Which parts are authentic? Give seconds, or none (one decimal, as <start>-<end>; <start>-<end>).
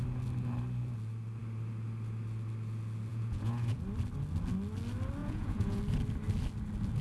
0.0-3.1; 3.8-5.2; 5.8-7.0